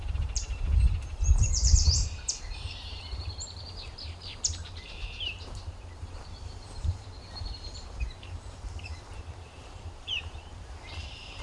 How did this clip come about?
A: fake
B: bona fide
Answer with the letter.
A